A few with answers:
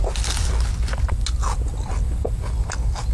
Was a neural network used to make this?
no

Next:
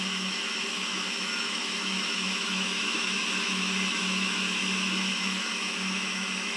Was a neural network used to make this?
yes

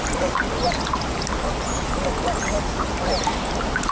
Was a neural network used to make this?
no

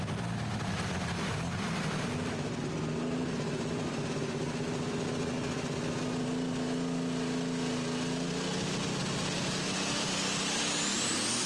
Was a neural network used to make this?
no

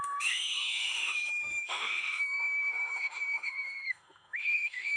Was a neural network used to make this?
yes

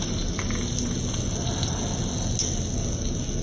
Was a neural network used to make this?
no